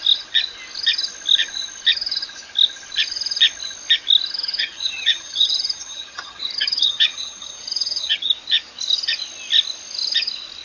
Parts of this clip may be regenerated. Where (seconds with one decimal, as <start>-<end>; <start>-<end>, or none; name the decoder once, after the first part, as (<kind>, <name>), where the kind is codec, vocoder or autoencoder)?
4.6-8.3 (vocoder, HiFi-GAN)

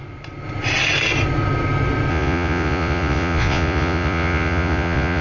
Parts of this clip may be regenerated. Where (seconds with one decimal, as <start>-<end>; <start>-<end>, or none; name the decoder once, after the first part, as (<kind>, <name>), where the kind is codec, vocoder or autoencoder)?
2.1-5.2 (vocoder, Vocos)

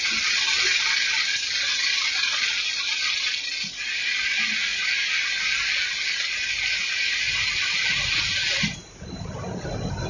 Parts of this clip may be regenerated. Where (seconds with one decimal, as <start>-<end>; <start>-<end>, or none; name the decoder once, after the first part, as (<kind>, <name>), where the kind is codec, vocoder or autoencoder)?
none

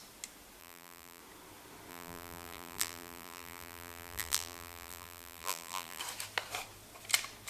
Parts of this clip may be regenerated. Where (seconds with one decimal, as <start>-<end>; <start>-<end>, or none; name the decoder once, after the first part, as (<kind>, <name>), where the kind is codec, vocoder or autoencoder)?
0.6-1.2 (vocoder, BigVGAN v2); 1.9-6.0

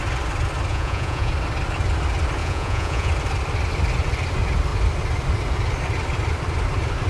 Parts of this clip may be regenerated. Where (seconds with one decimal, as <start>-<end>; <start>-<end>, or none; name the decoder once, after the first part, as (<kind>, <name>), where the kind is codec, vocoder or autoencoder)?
0.7-1.3 (vocoder, Vocos); 2.4-3.1

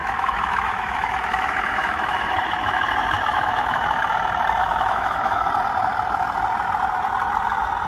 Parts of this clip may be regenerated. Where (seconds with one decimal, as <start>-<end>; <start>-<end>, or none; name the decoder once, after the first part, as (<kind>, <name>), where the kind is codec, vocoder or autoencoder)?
0.0-4.0 (autoencoder, DAC-VAE); 4.6-5.5

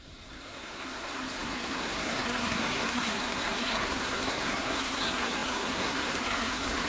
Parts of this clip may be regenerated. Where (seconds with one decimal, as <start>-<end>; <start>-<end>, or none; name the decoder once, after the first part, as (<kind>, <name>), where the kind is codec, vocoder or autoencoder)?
0.0-6.9 (codec, SNAC)